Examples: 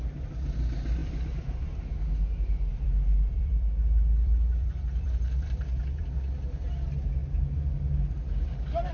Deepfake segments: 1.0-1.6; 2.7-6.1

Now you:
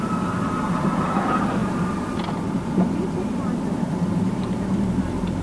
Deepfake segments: 0.0-5.4

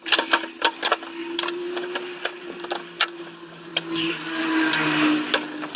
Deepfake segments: 1.2-2.4; 3.7-4.7